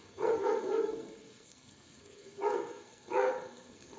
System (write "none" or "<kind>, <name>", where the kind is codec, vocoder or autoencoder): codec, SNAC